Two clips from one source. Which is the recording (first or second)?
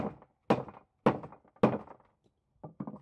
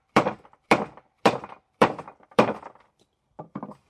first